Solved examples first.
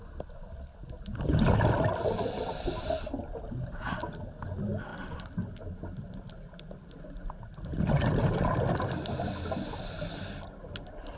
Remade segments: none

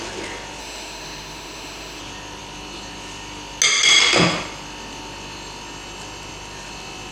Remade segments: 0.6-2.0

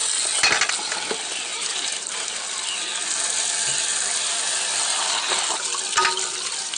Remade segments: none